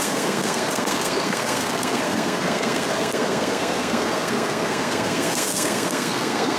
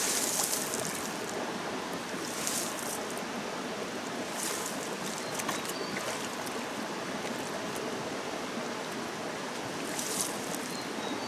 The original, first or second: second